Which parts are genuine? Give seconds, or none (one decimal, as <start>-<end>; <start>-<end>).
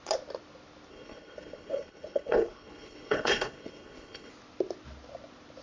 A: 0.0-0.9; 4.3-5.6